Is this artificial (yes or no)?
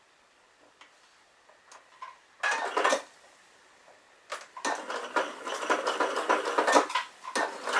no